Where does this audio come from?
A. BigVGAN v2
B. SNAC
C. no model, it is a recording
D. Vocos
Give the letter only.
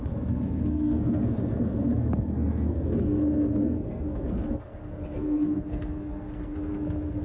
B